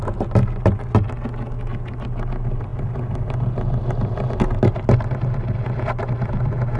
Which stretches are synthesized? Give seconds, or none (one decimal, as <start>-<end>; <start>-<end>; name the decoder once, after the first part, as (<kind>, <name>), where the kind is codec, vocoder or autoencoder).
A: none